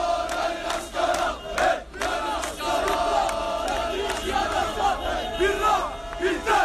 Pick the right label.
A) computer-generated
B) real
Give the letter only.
B